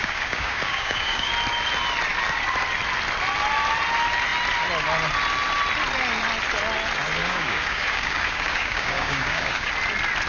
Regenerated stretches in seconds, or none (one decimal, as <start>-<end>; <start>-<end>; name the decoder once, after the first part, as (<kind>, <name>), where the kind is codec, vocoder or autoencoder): 0.0-1.3 (codec, DAC); 7.2-9.7